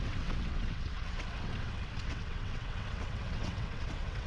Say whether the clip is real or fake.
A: fake